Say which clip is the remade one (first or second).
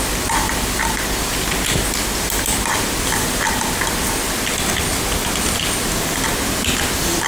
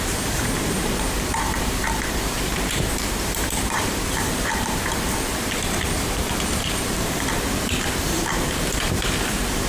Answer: second